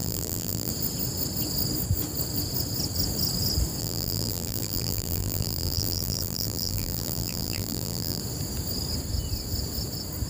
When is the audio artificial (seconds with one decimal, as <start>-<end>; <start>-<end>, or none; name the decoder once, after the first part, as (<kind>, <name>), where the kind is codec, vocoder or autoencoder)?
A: 0.0-0.7 (vocoder, BigVGAN v2); 3.8-8.2